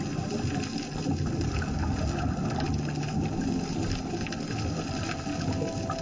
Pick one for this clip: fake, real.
real